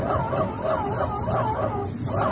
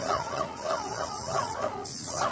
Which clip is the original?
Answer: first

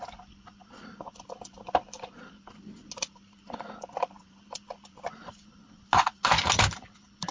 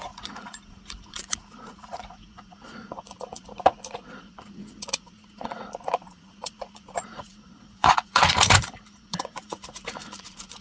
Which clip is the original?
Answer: first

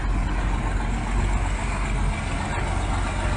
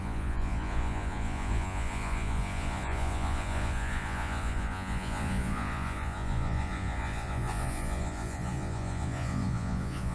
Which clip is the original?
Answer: first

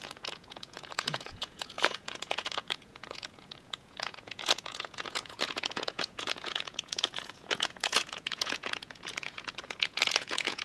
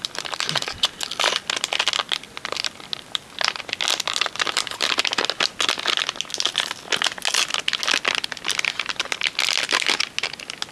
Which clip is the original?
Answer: second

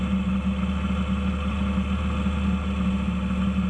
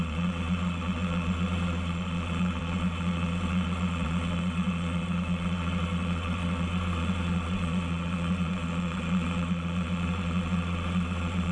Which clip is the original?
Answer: first